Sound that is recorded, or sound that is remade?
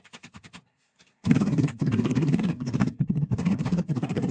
remade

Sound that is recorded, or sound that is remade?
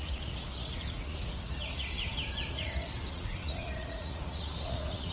remade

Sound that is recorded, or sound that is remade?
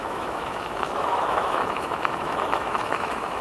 remade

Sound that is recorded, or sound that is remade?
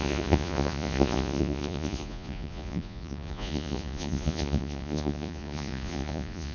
remade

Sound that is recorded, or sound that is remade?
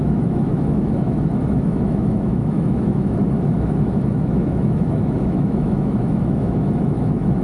remade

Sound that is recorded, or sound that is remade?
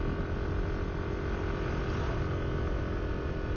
recorded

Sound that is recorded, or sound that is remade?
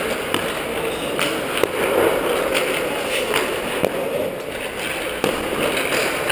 recorded